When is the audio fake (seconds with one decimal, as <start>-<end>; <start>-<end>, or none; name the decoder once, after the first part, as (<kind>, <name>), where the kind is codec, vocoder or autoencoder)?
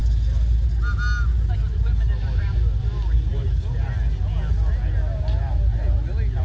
none